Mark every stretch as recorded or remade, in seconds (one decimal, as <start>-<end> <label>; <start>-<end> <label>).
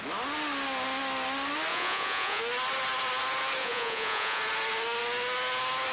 0.0-1.7 recorded; 1.7-2.4 remade; 2.4-3.6 recorded; 3.6-4.4 remade; 4.4-5.9 recorded